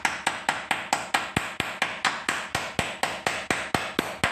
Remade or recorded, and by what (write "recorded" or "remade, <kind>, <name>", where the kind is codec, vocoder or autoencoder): recorded